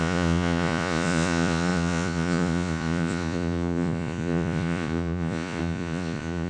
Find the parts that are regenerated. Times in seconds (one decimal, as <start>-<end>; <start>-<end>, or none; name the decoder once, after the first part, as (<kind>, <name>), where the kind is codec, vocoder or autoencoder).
0.0-6.5 (vocoder, Vocos)